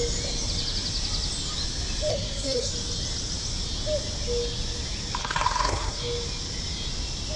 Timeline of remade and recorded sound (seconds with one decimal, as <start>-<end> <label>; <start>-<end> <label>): 0.0-2.1 recorded; 2.1-2.7 remade; 2.7-5.2 recorded; 5.2-6.0 remade; 6.0-7.4 recorded